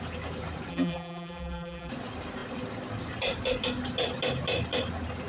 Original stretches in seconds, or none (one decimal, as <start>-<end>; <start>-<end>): 0.0-0.7; 1.9-5.3